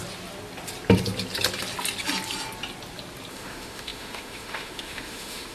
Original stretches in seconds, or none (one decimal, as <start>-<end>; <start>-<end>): 0.0-3.3